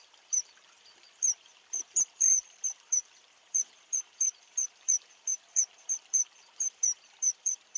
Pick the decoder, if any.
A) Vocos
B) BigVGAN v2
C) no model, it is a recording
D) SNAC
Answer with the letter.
B